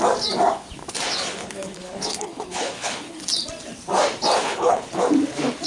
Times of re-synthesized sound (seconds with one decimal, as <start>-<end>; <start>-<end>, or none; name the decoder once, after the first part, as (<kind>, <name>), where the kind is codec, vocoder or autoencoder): 1.4-3.2 (codec, HILCodec); 4.4-5.0